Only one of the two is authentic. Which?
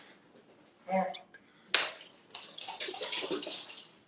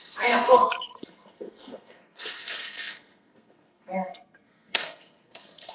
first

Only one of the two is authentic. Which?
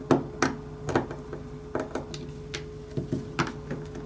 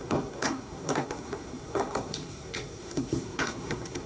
first